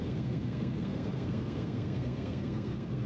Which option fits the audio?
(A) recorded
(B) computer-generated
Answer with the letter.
B